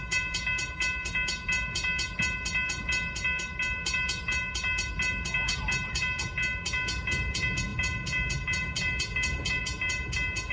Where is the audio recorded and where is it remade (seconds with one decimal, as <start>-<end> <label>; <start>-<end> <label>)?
0.0-10.5 recorded